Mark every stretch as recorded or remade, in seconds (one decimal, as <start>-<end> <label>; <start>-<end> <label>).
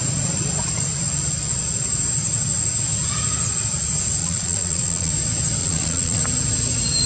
0.0-4.2 recorded; 4.2-5.1 remade; 5.1-5.6 recorded; 5.6-6.2 remade; 6.2-7.1 recorded